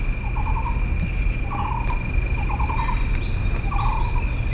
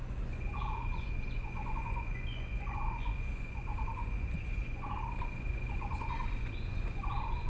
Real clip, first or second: first